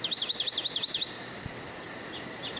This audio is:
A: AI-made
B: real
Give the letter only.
B